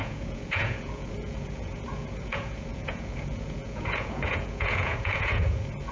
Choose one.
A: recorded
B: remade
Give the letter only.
B